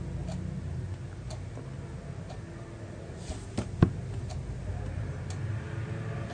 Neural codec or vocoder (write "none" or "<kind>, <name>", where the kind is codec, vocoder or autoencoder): none